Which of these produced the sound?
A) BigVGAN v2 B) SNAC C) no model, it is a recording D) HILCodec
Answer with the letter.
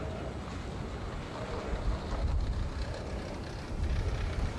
C